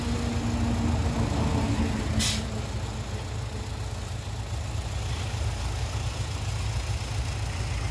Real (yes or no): yes